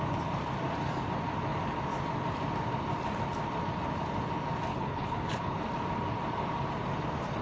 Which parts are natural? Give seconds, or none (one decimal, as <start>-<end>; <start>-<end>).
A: 0.0-4.7; 5.6-7.4